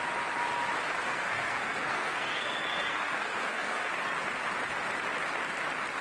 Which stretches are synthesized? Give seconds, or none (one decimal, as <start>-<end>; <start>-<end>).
1.0-3.9